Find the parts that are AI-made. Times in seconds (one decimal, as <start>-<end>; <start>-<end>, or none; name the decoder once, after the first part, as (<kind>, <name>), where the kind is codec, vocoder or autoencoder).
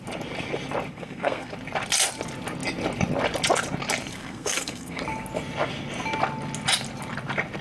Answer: 0.9-1.5 (codec, SNAC); 4.1-5.0